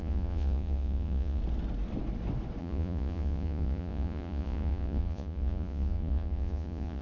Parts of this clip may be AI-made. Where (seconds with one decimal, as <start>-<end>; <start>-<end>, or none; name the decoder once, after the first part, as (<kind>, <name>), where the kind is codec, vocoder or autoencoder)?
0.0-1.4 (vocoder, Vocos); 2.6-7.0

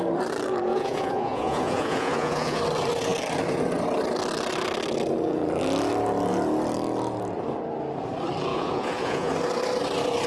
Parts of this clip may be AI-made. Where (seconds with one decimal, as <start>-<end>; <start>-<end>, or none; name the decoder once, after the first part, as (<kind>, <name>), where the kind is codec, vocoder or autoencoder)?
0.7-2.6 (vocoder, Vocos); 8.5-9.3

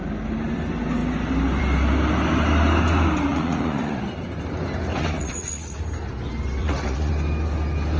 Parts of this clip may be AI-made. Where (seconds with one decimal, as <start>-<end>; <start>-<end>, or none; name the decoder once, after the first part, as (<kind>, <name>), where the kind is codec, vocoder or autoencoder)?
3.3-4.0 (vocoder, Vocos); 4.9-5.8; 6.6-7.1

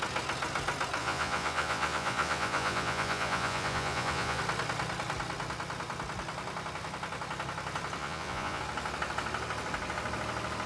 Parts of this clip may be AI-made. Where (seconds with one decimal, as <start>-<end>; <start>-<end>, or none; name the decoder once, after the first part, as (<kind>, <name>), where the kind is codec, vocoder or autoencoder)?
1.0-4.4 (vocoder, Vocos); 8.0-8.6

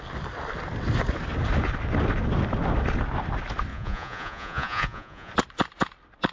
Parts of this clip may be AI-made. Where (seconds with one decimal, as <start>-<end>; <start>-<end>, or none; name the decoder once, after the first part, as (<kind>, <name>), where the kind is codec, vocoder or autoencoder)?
3.7-5.3 (vocoder, Vocos)

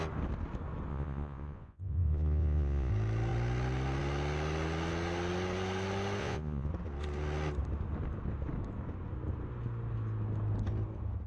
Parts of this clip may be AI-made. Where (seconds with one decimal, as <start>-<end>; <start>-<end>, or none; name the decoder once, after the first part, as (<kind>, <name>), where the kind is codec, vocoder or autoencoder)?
0.9-2.9 (vocoder, Vocos); 6.2-6.7

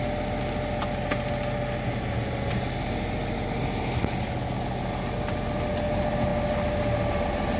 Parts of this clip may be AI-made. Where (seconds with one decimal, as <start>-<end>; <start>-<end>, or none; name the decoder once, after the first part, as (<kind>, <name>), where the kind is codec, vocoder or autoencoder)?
none